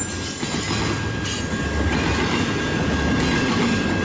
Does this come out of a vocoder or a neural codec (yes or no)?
no